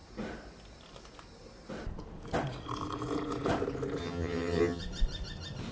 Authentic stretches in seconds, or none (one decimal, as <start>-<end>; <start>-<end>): 0.0-4.0; 4.8-5.7